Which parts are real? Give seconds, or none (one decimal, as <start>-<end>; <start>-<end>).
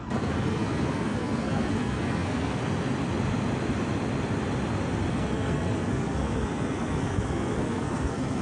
2.6-5.1